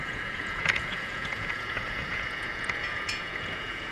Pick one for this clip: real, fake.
fake